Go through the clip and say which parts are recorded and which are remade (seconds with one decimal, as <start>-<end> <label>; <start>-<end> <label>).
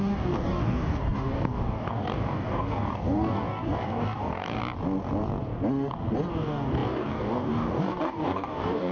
0.0-4.6 remade; 4.6-6.3 recorded; 6.3-8.9 remade